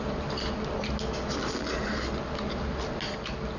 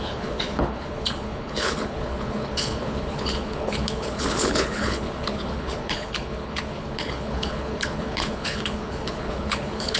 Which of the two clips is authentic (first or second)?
first